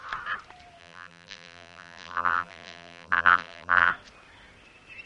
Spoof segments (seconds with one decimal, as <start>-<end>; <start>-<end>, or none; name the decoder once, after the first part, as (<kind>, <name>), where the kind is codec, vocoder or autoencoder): 0.8-3.9 (vocoder, BigVGAN v2)